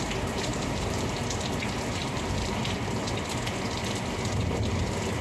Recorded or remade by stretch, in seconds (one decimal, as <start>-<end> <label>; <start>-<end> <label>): 0.0-0.5 recorded; 0.5-1.1 remade; 1.1-2.0 recorded; 2.0-2.6 remade; 2.6-5.2 recorded